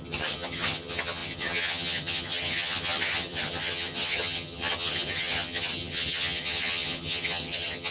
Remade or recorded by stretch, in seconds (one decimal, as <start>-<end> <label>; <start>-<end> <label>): 0.0-7.9 remade